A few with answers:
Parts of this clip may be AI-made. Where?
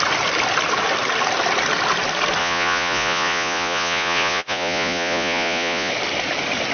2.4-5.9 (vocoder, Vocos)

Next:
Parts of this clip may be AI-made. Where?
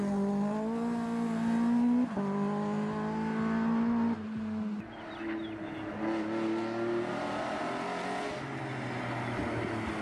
7.1-7.6 (vocoder, BigVGAN v2)